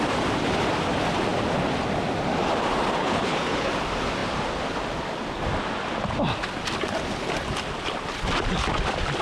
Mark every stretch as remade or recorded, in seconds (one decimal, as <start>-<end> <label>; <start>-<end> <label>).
0.0-3.0 recorded; 3.0-3.7 remade; 3.7-9.2 recorded